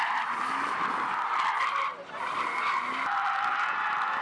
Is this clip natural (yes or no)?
yes